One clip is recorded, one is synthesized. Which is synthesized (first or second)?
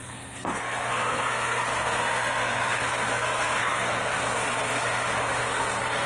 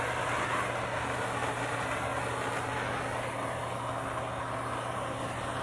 first